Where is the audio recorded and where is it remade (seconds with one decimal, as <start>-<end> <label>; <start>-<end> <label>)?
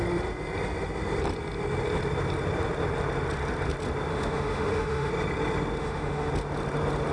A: 0.0-4.1 recorded; 4.1-5.1 remade; 5.1-5.8 recorded; 5.8-6.3 remade; 6.3-7.1 recorded